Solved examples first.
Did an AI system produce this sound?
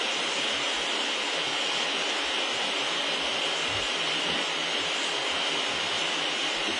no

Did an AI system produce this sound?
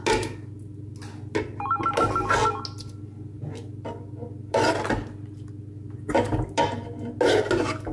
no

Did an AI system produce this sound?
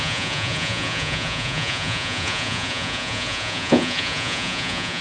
yes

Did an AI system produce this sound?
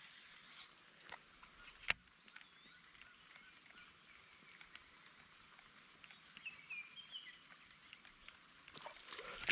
no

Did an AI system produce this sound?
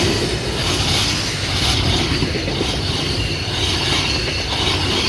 no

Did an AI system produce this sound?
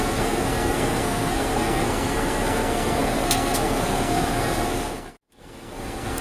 yes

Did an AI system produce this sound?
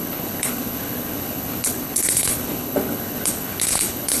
yes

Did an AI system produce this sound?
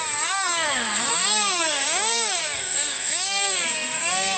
yes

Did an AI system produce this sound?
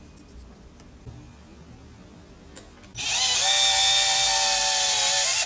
no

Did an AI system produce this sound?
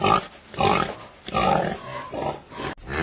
no